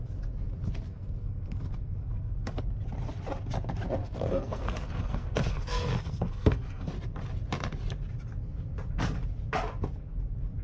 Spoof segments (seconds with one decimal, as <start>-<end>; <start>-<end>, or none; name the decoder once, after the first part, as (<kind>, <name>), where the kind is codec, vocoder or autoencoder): 0.9-2.6 (codec, SNAC); 4.0-6.9